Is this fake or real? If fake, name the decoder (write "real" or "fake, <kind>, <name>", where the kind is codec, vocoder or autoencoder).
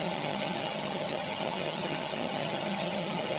fake, vocoder, HiFi-GAN